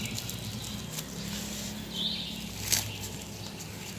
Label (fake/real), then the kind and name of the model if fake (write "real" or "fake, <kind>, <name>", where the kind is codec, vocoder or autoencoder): real